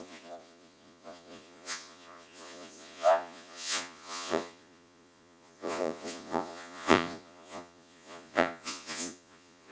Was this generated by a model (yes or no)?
yes